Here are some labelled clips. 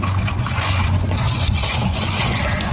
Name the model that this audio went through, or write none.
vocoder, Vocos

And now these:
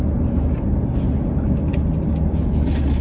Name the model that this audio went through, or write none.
none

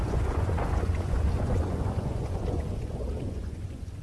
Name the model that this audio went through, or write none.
vocoder, Vocos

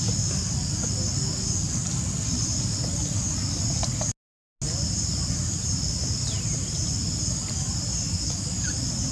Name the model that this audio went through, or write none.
none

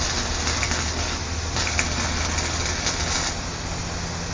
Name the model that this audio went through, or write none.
none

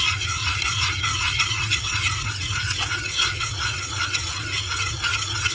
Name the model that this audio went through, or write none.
vocoder, Vocos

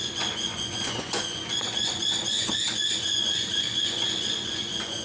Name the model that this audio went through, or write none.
vocoder, Vocos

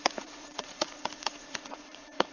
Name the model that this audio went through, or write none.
vocoder, Vocos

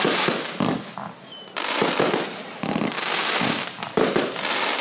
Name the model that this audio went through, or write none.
none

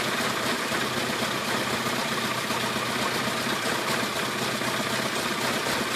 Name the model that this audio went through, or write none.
none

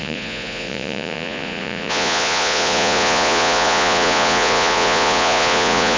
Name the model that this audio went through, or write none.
vocoder, Vocos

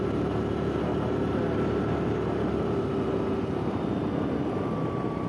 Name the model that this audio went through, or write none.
none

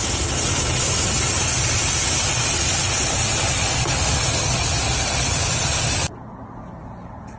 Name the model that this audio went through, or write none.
none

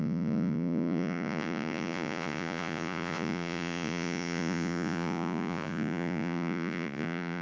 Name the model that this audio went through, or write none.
vocoder, Vocos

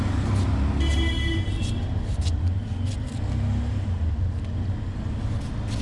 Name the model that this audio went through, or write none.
none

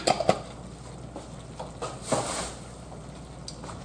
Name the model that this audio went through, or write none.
none